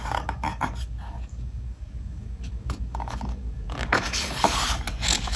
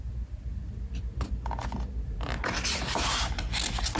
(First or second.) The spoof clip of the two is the first